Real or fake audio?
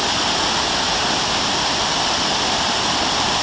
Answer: real